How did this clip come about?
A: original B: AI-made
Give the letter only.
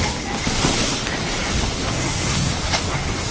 A